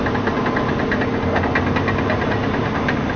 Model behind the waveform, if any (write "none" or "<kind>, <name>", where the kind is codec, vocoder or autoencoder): none